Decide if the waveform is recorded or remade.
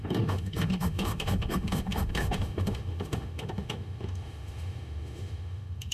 remade